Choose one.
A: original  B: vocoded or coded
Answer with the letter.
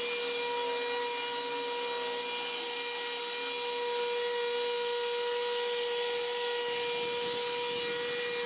A